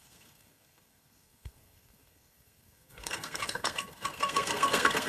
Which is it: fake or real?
fake